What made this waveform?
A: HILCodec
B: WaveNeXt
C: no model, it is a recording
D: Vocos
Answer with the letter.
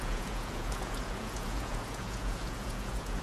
D